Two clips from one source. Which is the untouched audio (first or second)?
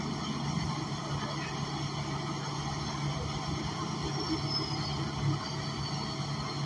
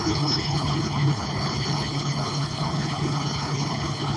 first